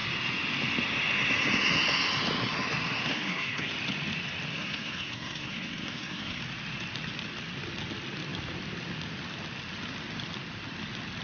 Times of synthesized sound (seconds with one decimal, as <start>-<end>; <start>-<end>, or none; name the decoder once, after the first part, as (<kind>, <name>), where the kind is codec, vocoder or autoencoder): 3.1-3.7 (codec, SNAC); 4.5-6.4